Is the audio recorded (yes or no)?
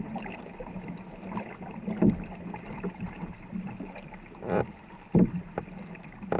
yes